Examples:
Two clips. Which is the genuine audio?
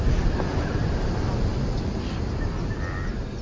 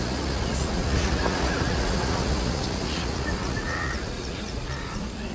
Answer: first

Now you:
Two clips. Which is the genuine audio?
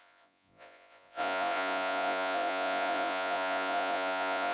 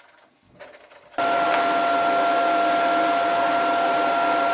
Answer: second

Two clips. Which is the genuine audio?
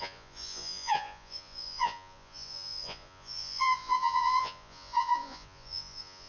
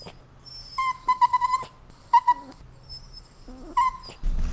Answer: second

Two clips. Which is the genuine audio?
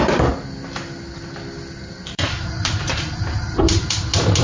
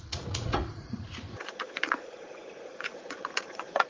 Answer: first